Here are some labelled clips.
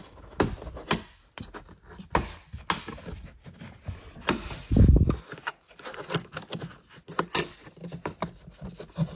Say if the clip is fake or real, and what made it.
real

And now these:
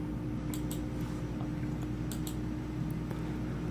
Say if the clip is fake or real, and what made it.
real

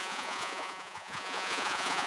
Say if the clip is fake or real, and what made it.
fake, vocoder, Vocos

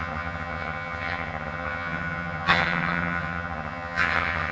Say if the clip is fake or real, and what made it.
fake, vocoder, HiFi-GAN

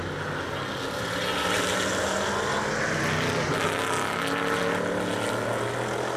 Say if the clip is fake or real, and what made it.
real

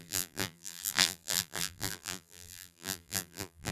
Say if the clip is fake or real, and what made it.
fake, vocoder, BigVGAN v2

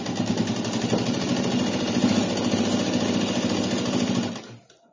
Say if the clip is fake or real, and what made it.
real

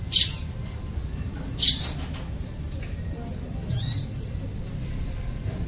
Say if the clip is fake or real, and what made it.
real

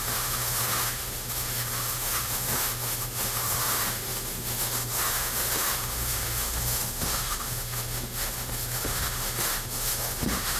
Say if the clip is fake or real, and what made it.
fake, autoencoder, DAC-VAE